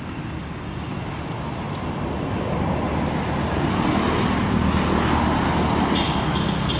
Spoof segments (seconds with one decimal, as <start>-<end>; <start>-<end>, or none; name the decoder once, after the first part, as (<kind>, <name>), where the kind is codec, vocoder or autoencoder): 0.4-0.9 (codec, DAC)